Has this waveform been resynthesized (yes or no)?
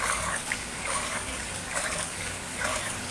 yes